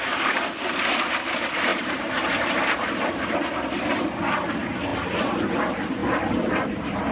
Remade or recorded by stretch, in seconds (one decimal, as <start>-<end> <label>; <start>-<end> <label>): 0.0-1.7 recorded; 1.7-3.1 remade; 3.1-7.1 recorded